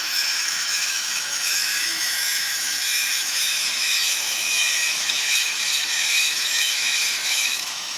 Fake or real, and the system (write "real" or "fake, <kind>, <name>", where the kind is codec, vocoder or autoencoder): fake, autoencoder, DAC-VAE